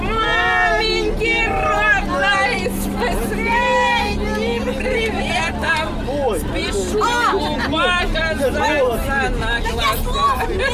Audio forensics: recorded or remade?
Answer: recorded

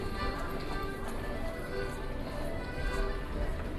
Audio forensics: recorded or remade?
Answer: recorded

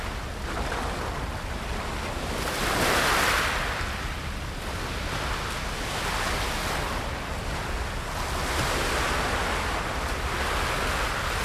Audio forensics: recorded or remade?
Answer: recorded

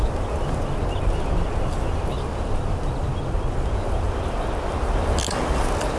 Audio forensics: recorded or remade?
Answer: recorded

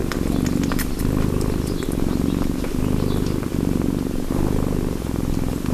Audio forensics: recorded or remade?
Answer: recorded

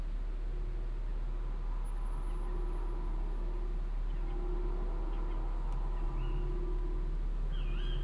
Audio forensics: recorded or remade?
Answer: recorded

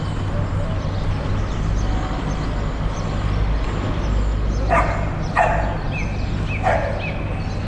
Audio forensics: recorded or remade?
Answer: recorded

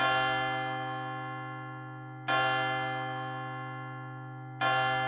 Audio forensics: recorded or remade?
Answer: recorded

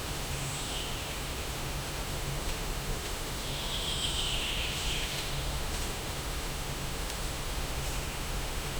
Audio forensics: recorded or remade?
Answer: remade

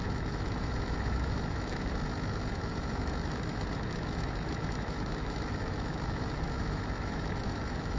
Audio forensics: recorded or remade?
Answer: remade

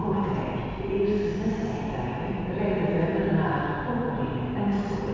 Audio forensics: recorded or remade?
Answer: recorded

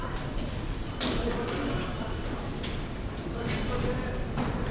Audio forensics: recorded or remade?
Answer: recorded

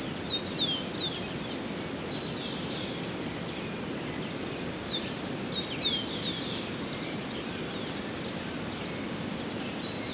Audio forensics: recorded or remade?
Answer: recorded